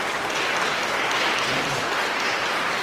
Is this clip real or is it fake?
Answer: real